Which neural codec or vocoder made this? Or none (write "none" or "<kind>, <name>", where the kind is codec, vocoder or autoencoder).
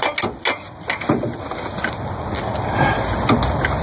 none